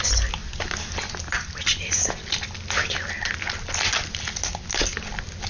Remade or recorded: recorded